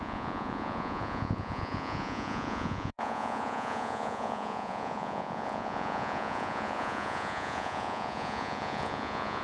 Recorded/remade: remade